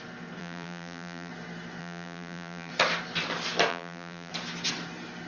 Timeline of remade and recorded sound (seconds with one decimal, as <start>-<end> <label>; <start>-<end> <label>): 0.0-0.4 recorded; 0.4-1.3 remade; 1.3-1.8 recorded; 1.8-2.7 remade; 2.7-3.7 recorded; 3.7-4.3 remade; 4.3-5.3 recorded

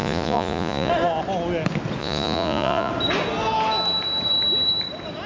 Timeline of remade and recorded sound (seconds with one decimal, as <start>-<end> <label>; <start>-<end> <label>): 0.0-0.9 remade; 0.9-2.0 recorded; 2.0-2.9 remade; 2.9-5.3 recorded

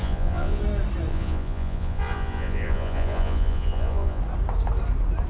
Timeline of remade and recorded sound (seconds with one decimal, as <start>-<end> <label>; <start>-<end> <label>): 0.0-0.6 remade; 0.6-1.1 recorded; 1.1-4.2 remade; 4.2-5.3 recorded

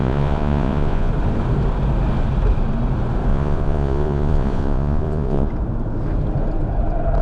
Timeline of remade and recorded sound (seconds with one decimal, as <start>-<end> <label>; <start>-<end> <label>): 0.0-1.1 remade; 1.1-3.3 recorded; 3.3-5.5 remade; 5.5-7.2 recorded

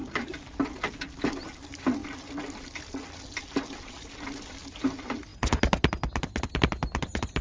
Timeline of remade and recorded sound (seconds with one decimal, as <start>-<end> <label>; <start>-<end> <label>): 0.0-7.4 recorded

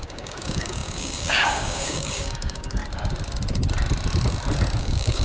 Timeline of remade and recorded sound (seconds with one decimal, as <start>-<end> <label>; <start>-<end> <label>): 0.0-2.8 remade; 2.8-4.8 recorded; 4.8-5.2 remade

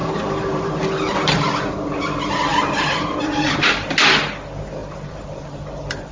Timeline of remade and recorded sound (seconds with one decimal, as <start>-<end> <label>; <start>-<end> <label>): 0.0-1.7 remade; 1.7-2.5 recorded; 2.5-3.9 remade; 3.9-4.8 recorded; 4.8-6.1 remade